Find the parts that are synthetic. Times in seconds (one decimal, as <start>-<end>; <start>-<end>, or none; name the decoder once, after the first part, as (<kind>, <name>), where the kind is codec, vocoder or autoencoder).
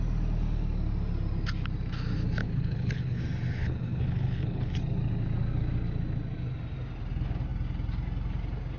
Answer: 2.4-3.2 (codec, HILCodec); 3.6-4.7